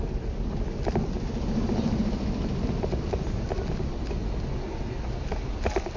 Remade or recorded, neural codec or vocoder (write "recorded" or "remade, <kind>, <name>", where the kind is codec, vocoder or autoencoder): recorded